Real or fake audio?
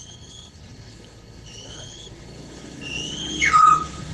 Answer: fake